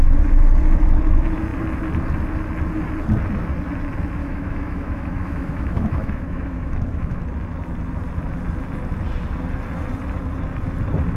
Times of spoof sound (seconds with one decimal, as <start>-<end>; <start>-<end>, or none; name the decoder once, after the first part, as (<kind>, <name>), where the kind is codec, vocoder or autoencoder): 4.2-7.2 (autoencoder, DAC-VAE)